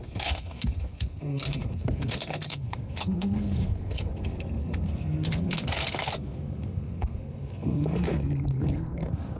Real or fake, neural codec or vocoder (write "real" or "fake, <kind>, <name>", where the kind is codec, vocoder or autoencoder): fake, codec, SNAC